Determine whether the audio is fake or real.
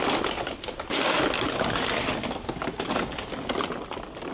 real